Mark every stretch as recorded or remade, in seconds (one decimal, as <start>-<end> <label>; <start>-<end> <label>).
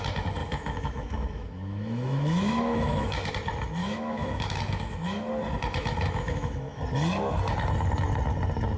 0.0-0.4 recorded; 0.4-3.3 remade; 3.3-3.8 recorded; 3.8-5.3 remade; 5.3-5.8 recorded; 5.8-6.8 remade; 6.8-8.8 recorded